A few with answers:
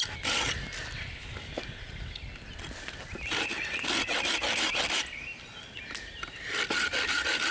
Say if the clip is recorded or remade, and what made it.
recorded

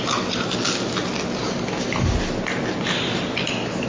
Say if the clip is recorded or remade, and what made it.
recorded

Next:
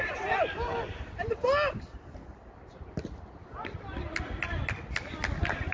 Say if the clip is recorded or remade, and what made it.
recorded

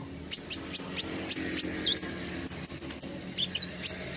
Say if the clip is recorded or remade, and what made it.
recorded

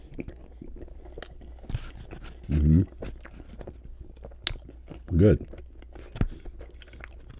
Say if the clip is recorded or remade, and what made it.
recorded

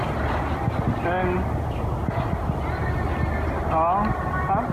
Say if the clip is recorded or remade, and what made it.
recorded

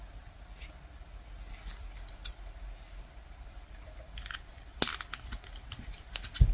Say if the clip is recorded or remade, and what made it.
recorded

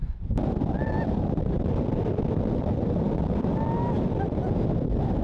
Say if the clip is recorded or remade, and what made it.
recorded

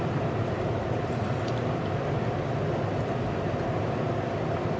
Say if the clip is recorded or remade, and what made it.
recorded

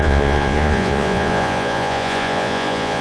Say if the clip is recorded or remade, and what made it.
remade, vocoder, Vocos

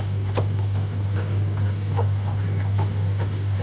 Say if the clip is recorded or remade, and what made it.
remade, codec, DAC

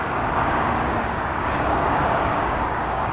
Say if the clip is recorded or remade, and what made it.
remade, codec, DAC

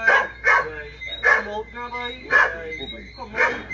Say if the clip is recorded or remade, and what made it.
recorded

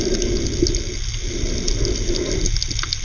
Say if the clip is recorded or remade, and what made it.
recorded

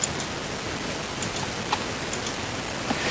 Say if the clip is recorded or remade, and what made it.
recorded